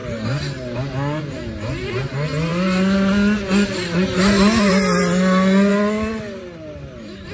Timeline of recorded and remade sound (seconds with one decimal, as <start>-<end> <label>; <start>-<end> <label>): 0.0-5.7 recorded; 5.7-7.3 remade